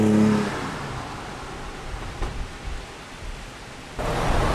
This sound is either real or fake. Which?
real